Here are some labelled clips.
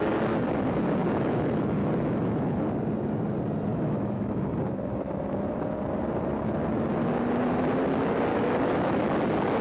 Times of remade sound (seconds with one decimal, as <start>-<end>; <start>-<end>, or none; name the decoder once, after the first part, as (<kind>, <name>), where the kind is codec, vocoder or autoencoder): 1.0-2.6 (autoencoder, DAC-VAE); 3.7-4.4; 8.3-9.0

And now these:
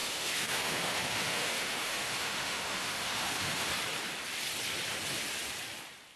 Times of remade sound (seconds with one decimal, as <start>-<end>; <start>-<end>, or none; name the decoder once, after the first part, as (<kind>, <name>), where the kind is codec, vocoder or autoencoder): 0.0-3.7 (autoencoder, DAC-VAE)

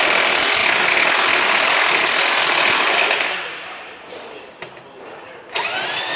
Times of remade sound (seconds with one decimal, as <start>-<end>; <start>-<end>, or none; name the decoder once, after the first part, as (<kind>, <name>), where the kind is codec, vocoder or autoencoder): none

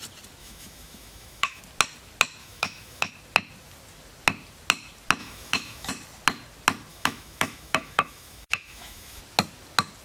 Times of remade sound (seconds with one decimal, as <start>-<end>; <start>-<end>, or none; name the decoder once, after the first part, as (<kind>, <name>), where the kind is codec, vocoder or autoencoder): 0.4-1.6 (autoencoder, DAC-VAE); 2.4-3.1; 5.2-5.9; 6.9-9.2

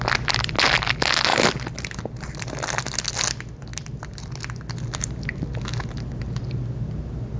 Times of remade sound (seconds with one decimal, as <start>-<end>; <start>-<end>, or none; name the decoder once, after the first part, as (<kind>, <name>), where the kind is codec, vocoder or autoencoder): none

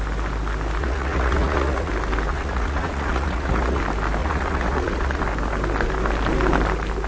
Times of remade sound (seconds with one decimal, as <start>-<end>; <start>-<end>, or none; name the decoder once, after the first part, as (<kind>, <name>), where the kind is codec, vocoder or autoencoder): 0.8-1.9 (vocoder, Vocos); 2.3-3.8; 4.2-5.2